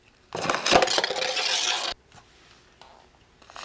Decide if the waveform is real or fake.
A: real